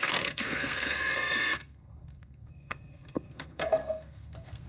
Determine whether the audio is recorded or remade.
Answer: remade